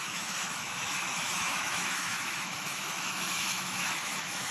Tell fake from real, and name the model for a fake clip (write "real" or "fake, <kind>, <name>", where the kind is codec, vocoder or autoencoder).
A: fake, autoencoder, DAC-VAE